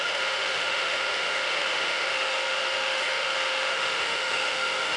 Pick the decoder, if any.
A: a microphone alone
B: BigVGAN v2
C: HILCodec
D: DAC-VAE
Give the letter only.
D